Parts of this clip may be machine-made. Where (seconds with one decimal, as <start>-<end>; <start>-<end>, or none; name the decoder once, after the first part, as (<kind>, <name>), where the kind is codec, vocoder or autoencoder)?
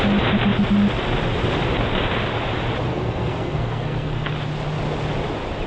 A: 2.9-4.3 (codec, SNAC)